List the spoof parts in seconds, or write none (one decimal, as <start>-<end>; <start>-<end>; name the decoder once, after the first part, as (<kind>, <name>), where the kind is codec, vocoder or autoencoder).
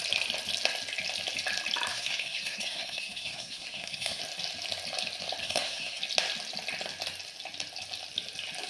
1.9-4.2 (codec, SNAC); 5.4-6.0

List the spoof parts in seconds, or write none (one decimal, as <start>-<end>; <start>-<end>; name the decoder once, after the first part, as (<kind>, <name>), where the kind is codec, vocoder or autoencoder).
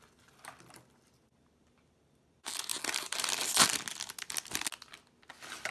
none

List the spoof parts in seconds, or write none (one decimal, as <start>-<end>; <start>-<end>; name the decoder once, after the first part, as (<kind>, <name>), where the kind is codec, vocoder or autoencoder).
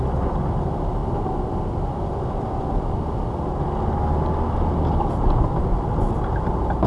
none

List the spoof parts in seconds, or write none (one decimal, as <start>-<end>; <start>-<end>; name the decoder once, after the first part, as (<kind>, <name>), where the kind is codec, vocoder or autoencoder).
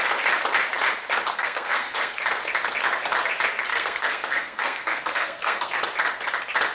1.3-2.2 (codec, SNAC); 3.7-5.8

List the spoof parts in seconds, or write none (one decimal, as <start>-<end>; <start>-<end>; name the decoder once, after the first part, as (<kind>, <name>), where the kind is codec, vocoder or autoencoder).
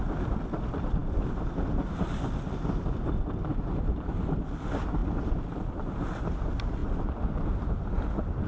none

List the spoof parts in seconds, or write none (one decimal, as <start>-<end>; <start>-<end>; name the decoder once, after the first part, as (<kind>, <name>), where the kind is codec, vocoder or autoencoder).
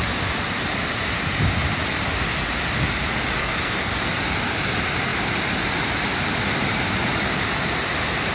3.4-3.9 (codec, SNAC)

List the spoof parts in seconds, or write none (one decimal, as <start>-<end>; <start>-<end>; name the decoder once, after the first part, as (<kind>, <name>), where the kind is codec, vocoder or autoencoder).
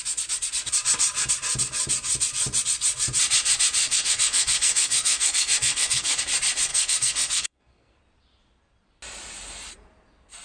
3.8-6.2 (codec, SNAC); 6.7-8.0